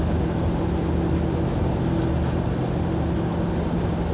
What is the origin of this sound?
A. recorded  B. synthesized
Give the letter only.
A